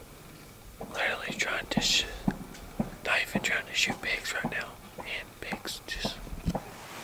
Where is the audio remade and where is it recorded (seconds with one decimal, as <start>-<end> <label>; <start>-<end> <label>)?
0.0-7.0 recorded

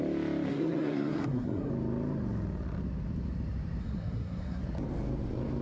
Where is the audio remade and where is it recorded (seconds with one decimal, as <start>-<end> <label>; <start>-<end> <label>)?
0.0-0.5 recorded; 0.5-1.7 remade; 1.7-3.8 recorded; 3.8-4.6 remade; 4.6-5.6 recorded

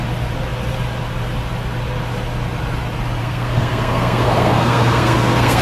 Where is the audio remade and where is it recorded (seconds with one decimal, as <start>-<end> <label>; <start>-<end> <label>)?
0.0-3.2 recorded; 3.2-5.6 remade

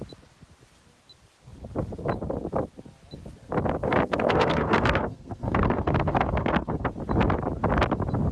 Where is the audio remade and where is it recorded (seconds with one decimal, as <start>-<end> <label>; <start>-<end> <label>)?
0.0-3.8 recorded; 3.8-6.8 remade; 6.8-8.3 recorded

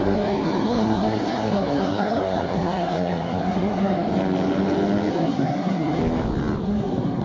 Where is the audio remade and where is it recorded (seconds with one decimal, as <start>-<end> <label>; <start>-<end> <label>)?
0.0-4.1 remade; 4.1-5.1 recorded; 5.1-6.0 remade; 6.0-6.6 recorded; 6.6-7.2 remade

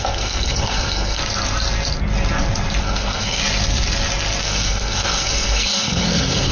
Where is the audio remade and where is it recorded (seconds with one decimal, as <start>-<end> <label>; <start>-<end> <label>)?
0.0-1.2 remade; 1.2-2.8 recorded; 2.8-3.4 remade; 3.4-4.4 recorded; 4.4-6.5 remade